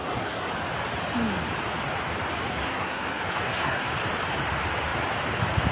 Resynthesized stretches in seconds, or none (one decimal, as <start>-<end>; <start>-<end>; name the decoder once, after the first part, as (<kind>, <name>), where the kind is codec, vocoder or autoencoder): 0.0-0.5 (codec, SNAC); 2.5-3.9